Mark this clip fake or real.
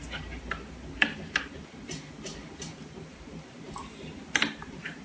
fake